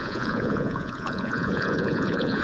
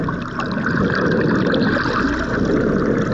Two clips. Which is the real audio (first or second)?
second